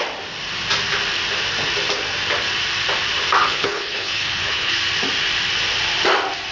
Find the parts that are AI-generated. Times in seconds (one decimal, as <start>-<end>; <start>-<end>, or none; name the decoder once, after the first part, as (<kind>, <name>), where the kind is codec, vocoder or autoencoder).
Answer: 3.4-4.8 (codec, HILCodec)